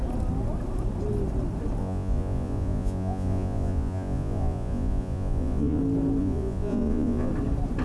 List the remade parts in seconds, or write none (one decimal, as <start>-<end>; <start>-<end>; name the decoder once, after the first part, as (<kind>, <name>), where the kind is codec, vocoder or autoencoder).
1.8-5.8 (vocoder, Vocos); 6.2-7.3